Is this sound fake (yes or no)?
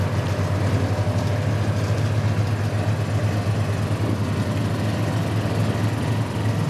no